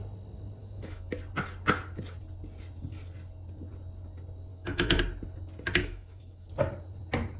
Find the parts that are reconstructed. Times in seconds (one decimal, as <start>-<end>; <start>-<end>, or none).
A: 0.6-1.1; 4.5-5.0; 5.8-6.5